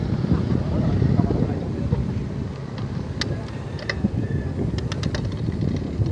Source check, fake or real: real